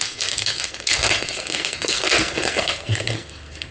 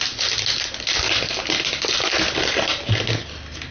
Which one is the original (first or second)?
second